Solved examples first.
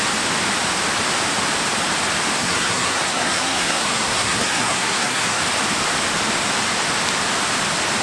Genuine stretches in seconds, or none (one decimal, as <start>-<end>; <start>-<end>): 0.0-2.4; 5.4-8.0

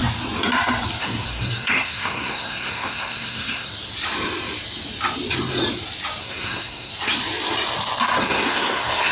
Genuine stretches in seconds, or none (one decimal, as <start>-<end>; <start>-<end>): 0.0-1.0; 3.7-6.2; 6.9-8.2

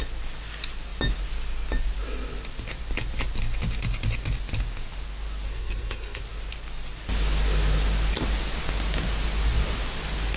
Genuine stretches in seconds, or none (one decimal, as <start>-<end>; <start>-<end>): 0.0-5.5; 6.2-10.4

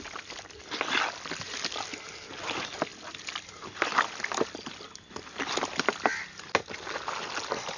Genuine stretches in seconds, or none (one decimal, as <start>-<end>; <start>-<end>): 0.0-7.8

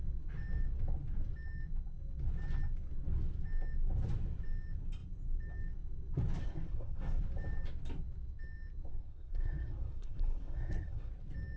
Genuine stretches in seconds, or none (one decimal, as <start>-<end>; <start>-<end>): 0.0-6.4; 7.2-8.9; 11.1-11.6

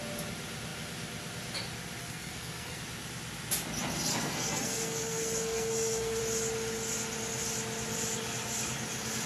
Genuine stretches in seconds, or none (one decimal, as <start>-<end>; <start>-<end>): 0.0-2.0; 2.8-4.1; 6.2-9.3